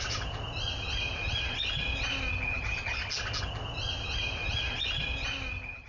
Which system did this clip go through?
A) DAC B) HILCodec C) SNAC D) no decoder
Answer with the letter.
D